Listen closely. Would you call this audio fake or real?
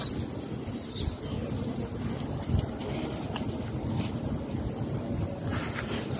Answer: real